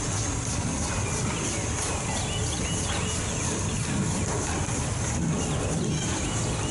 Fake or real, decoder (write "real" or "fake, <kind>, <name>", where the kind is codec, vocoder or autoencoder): real